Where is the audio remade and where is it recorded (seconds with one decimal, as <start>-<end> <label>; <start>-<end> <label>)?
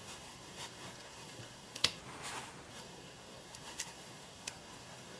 0.0-2.0 remade; 2.0-2.7 recorded; 2.7-5.2 remade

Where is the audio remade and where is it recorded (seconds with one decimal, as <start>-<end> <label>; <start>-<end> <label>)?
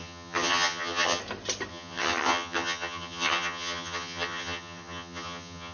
0.0-1.2 remade; 1.2-1.7 recorded; 1.7-5.7 remade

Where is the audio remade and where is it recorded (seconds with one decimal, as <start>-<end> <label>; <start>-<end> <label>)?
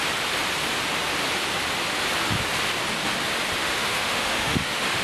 0.0-3.6 recorded; 3.6-5.0 remade